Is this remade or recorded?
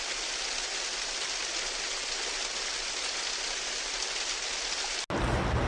recorded